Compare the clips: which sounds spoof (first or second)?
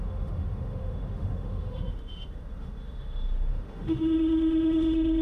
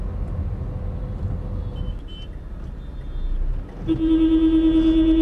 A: first